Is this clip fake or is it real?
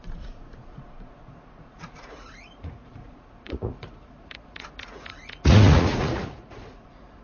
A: fake